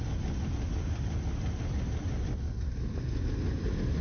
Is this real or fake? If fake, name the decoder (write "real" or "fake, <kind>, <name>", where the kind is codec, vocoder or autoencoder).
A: real